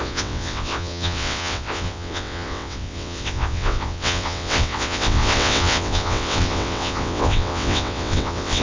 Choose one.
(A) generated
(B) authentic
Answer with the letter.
A